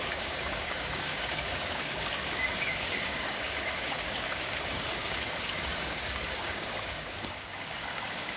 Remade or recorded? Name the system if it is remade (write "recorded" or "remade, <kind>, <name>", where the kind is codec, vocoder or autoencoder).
remade, codec, DAC